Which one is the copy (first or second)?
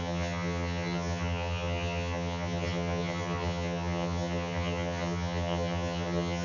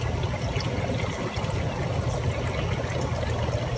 first